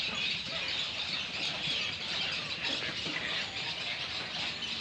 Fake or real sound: real